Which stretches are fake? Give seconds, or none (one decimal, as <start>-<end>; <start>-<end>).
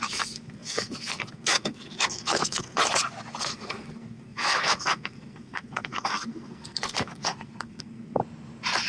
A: 0.0-2.8; 3.4-8.2